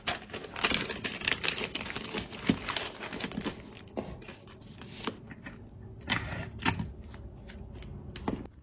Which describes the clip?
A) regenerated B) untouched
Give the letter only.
B